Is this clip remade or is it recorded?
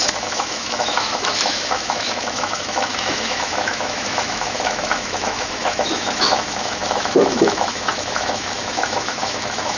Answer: remade